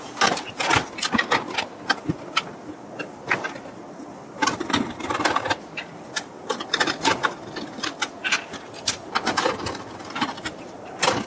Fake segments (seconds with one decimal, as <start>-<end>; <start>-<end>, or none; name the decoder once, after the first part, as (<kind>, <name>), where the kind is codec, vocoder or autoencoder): 10.0-10.9 (vocoder, BigVGAN v2)